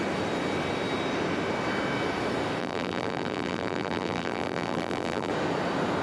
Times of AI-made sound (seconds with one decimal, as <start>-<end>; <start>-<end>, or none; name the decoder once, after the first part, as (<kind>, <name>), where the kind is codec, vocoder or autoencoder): 2.6-5.3 (vocoder, BigVGAN v2)